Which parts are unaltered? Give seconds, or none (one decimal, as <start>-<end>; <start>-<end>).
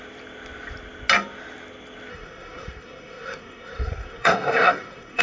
0.0-2.1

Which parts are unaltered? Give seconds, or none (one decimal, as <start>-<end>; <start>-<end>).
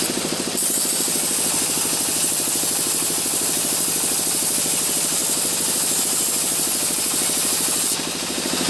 0.0-8.7